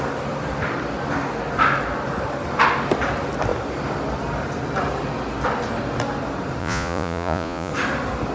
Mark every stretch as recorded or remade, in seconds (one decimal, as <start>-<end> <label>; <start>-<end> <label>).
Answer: 0.0-6.6 recorded; 6.6-7.7 remade; 7.7-8.3 recorded